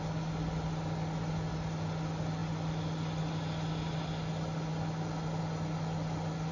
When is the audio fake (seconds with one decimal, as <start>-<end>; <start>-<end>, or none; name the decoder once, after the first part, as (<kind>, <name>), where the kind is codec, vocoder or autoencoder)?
none

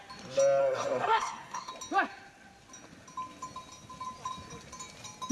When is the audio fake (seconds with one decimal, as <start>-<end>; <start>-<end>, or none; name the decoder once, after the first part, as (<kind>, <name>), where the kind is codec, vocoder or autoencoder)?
0.6-1.7 (codec, SNAC)

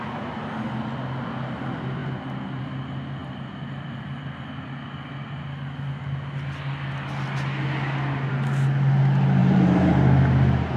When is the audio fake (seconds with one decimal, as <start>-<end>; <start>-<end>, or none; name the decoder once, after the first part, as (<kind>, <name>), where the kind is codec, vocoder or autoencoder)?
9.4-9.9 (vocoder, BigVGAN v2)

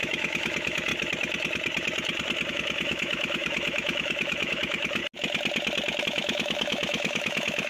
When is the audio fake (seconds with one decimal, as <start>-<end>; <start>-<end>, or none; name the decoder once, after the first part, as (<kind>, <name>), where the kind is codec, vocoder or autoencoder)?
0.0-0.9 (autoencoder, DAC-VAE); 2.5-5.0; 6.0-7.7